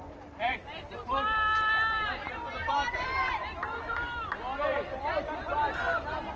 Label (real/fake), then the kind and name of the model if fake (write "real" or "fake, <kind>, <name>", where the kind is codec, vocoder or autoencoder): fake, vocoder, BigVGAN v2